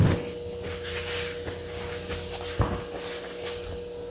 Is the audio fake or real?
real